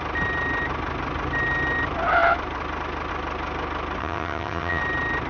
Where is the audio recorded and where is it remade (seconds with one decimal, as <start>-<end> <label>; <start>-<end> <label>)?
0.0-4.0 recorded; 4.0-4.8 remade; 4.8-5.3 recorded